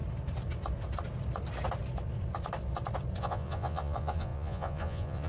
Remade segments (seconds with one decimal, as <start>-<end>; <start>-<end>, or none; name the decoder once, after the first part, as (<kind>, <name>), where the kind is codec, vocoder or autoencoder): 3.2-5.3 (vocoder, Vocos)